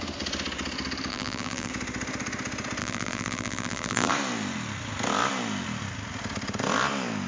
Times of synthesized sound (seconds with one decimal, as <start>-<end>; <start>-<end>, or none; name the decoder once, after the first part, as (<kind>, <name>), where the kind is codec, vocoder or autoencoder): 1.1-1.7 (vocoder, BigVGAN v2); 2.8-4.1

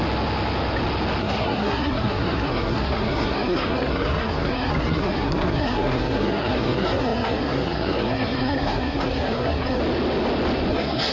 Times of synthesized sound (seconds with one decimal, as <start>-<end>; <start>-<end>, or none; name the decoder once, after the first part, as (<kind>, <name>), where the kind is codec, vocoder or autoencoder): 1.2-9.8 (codec, SNAC); 10.7-11.1

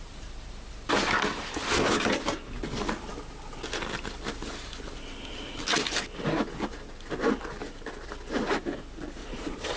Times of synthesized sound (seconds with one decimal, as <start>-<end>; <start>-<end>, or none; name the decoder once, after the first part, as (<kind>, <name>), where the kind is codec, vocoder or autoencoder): 9.2-9.8 (vocoder, Vocos)

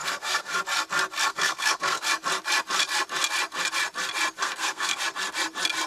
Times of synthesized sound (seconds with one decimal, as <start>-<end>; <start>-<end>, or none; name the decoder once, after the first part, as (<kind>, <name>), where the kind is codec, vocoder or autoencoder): 0.0-0.6 (codec, SNAC); 1.3-2.1; 4.4-5.0

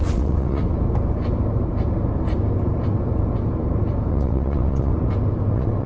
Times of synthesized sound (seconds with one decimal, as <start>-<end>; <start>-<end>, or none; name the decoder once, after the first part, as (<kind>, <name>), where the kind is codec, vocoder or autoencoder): 0.0-0.6 (vocoder, WaveNeXt); 4.1-4.9; 5.5-5.9

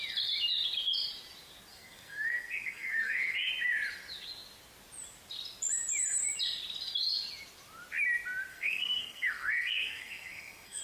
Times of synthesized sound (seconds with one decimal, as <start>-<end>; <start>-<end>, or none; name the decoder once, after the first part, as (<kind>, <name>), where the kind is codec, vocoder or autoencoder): 1.7-3.5 (codec, SNAC); 8.5-10.8

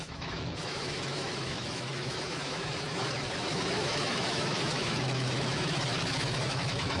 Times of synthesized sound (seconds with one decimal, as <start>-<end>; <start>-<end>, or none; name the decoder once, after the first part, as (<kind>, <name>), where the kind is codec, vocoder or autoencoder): 0.0-7.0 (autoencoder, DAC-VAE)